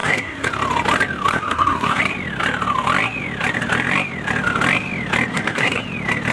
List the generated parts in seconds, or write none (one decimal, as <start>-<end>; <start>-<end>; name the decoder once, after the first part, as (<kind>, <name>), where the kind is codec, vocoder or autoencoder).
0.0-0.5 (codec, SNAC); 1.3-2.0; 5.3-5.8